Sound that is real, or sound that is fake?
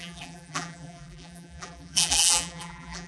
fake